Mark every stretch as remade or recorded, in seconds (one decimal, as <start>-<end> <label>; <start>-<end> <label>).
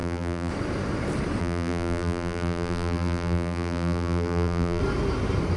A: 0.0-0.5 remade; 0.5-1.4 recorded; 1.4-4.8 remade; 4.8-5.6 recorded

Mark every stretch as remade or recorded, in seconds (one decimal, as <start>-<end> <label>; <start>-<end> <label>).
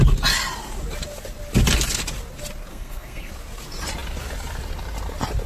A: 0.0-2.7 recorded; 2.7-3.3 remade; 3.3-5.5 recorded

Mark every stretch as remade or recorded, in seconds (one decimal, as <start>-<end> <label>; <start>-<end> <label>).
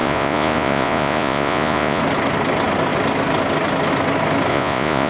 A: 0.0-2.0 remade; 2.0-4.5 recorded; 4.5-5.1 remade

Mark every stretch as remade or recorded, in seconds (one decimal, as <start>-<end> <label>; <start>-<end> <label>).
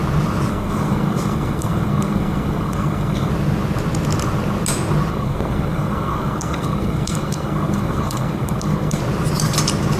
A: 0.0-0.5 recorded; 0.5-3.3 remade; 3.3-5.1 recorded; 5.1-9.0 remade; 9.0-10.0 recorded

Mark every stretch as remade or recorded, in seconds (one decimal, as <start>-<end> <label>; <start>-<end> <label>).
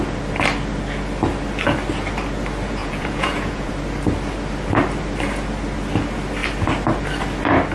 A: 0.0-2.8 recorded; 2.8-3.7 remade; 3.7-7.7 recorded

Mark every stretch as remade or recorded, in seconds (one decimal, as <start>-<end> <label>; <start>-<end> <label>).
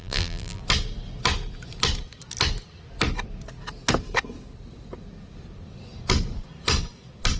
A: 0.0-0.6 remade; 0.6-7.4 recorded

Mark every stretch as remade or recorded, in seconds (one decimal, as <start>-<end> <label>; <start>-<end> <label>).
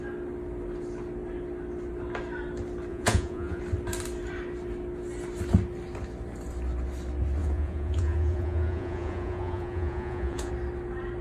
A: 0.0-2.9 recorded; 2.9-3.6 remade; 3.6-7.4 recorded; 7.4-10.5 remade; 10.5-11.2 recorded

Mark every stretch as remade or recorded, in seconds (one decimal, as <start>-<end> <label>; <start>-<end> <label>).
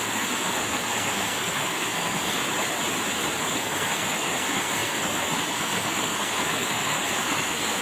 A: 0.0-2.4 remade; 2.4-3.4 recorded; 3.4-7.8 remade